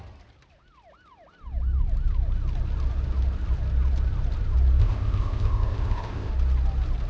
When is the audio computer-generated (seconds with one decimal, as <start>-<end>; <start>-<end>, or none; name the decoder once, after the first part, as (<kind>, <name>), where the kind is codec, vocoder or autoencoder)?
4.8-6.3 (codec, ZipCodec)